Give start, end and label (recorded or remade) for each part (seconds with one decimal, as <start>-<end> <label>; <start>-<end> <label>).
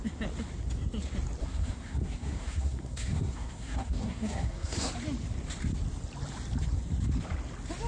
0.0-1.4 recorded; 1.4-4.9 remade; 4.9-7.9 recorded